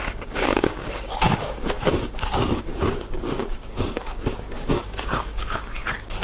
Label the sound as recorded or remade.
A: remade